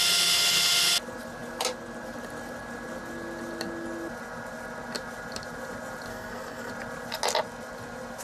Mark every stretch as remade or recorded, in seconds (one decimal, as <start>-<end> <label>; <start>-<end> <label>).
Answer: 0.0-6.1 recorded; 6.1-6.7 remade; 6.7-8.2 recorded